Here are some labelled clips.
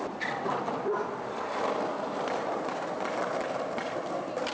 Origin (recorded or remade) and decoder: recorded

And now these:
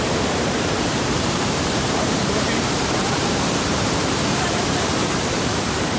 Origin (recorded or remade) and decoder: remade, vocoder, BigVGAN v2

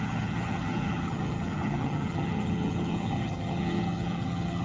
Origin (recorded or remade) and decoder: remade, vocoder, HiFi-GAN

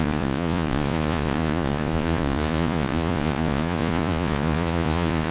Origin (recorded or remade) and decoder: remade, vocoder, Vocos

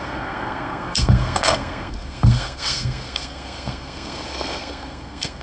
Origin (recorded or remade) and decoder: remade, codec, SNAC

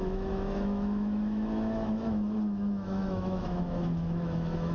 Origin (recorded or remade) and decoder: remade, autoencoder, DAC-VAE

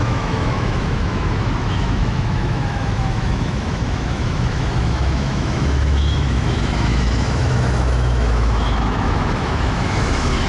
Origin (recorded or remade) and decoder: remade, autoencoder, DAC-VAE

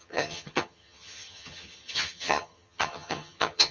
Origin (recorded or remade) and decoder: remade, vocoder, HiFi-GAN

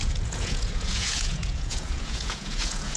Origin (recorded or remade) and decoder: remade, vocoder, Vocos